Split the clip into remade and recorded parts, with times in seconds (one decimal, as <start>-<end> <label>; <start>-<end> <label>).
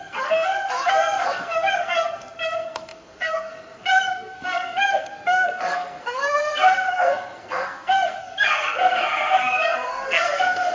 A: 0.0-10.7 remade